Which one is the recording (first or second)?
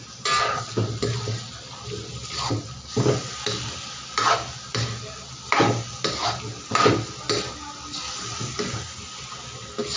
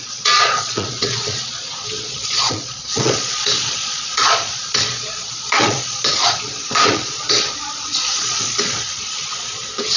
first